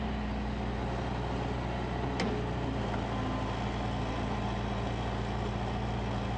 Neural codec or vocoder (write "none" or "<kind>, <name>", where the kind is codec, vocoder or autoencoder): none